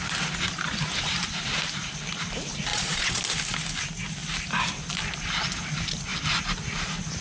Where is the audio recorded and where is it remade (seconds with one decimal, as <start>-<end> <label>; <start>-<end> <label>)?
0.0-2.7 recorded; 2.7-3.2 remade; 3.2-7.2 recorded